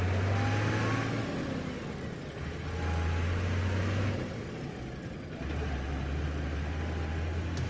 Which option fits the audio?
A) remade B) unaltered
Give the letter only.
B